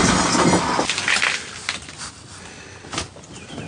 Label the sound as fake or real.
real